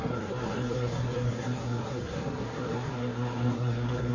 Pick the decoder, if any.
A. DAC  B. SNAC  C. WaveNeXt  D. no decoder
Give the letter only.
B